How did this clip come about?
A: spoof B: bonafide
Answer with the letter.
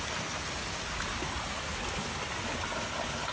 B